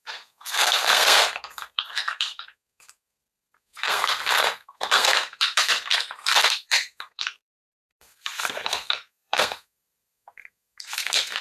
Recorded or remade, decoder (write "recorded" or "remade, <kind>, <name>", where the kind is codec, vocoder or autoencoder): remade, codec, SNAC